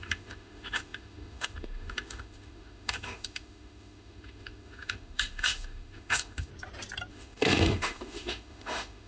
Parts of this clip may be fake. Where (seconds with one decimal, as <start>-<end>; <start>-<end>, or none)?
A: 0.0-6.5; 7.1-9.1